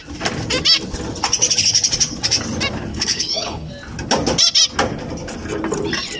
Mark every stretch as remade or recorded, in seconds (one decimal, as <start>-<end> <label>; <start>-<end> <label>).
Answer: 0.0-2.9 recorded; 2.9-3.7 remade; 3.7-6.2 recorded